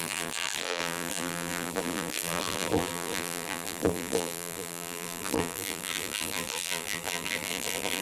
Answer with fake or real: fake